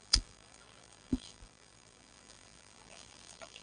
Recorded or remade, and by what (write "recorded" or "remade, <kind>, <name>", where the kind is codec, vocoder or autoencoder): remade, vocoder, BigVGAN v2